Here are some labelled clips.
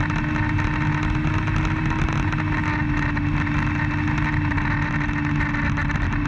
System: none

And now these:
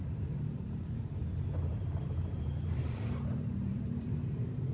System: vocoder, BigVGAN v2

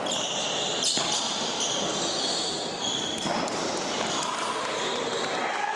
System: none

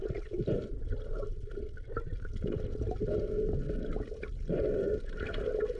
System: none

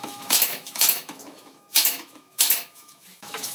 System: autoencoder, DAC-VAE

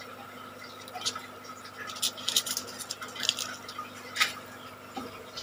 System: none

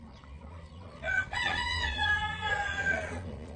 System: vocoder, Vocos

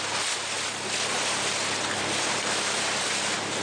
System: vocoder, BigVGAN v2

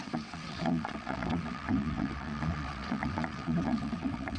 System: vocoder, WaveNeXt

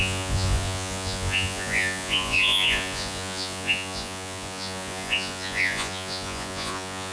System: vocoder, Vocos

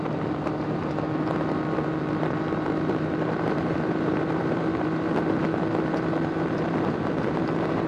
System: vocoder, BigVGAN v2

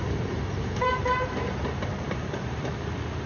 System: vocoder, BigVGAN v2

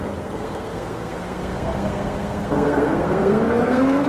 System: codec, SNAC